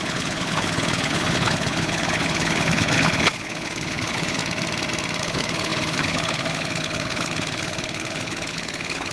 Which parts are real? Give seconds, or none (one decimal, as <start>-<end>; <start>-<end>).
4.4-5.2